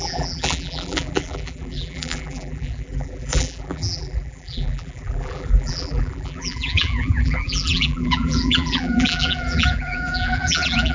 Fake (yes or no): yes